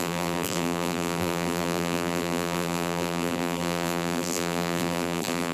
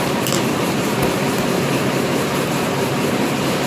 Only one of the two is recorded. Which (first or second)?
second